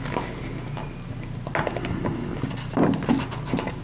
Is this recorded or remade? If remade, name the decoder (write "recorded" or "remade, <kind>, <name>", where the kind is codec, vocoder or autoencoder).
recorded